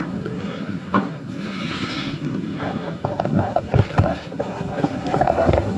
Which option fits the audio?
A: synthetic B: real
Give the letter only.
A